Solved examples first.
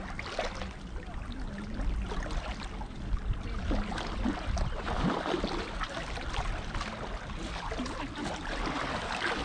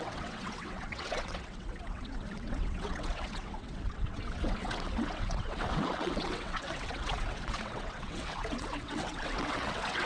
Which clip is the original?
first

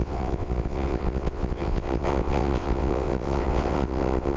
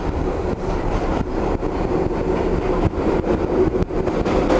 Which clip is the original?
second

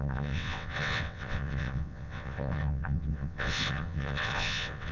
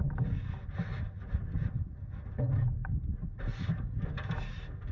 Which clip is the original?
second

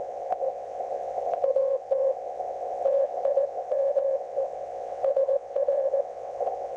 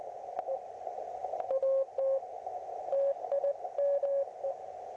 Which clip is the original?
second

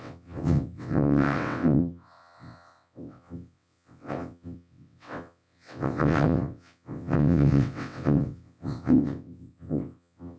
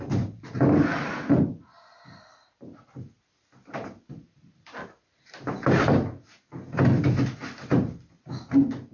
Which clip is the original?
second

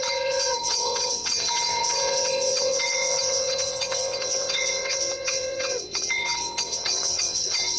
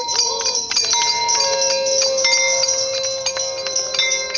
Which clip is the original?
second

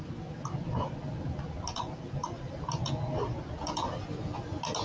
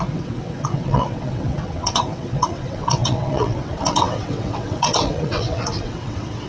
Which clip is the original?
first